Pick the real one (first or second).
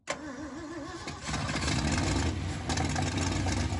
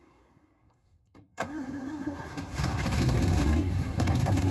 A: first